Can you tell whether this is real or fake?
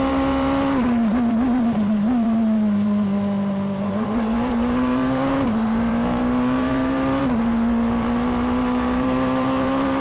fake